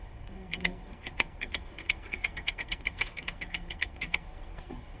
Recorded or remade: remade